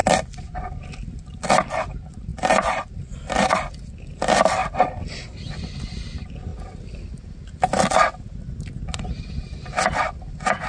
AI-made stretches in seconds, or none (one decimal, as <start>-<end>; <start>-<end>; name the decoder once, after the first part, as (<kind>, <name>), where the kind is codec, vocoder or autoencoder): 0.0-1.8 (vocoder, BigVGAN v2); 2.3-3.4